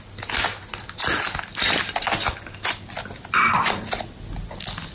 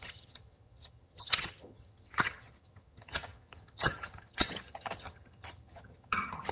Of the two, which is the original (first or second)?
first